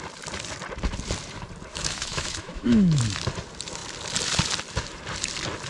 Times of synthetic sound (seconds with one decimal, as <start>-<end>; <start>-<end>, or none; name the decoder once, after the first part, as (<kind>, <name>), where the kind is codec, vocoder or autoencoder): 1.7-3.0 (autoencoder, DAC-VAE)